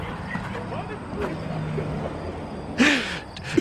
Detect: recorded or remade recorded